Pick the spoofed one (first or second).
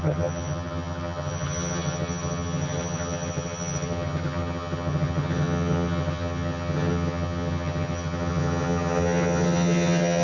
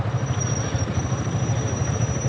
first